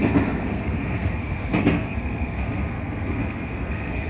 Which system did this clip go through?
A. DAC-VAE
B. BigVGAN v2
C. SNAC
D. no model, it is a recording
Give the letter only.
C